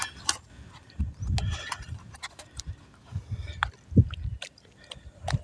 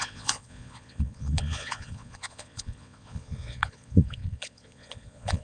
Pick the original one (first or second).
first